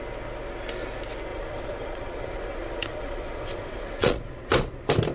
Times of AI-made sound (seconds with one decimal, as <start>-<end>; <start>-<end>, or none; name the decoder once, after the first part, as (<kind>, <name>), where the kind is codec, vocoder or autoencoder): 1.3-4.4 (vocoder, Vocos)